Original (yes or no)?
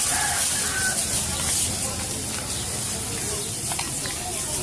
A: yes